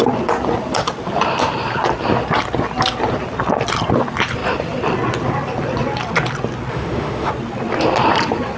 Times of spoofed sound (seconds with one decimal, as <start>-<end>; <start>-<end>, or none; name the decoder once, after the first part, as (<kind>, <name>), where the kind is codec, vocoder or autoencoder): 6.7-7.3 (autoencoder, DAC-VAE)